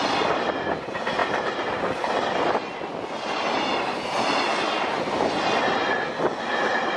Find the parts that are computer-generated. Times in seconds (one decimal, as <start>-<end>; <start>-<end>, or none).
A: none